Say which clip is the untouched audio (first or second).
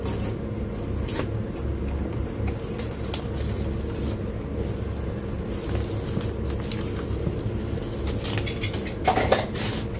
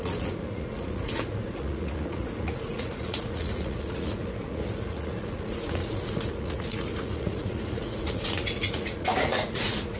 first